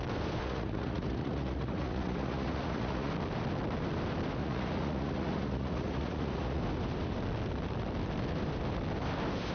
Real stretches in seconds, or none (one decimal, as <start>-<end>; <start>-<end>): 0.0-0.4; 3.1-4.4; 6.6-9.5